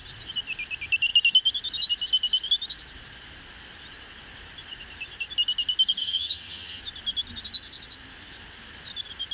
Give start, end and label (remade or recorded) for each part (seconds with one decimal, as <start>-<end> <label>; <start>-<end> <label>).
0.0-6.0 recorded; 6.0-6.8 remade; 6.8-9.3 recorded